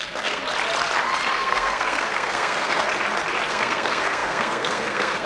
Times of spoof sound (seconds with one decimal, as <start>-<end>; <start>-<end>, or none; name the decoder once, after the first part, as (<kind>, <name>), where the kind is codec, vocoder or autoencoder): 0.0-0.4 (codec, SNAC); 1.3-2.9; 3.5-5.3